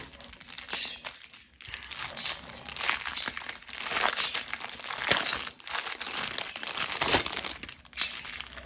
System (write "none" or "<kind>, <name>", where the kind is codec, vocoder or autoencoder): none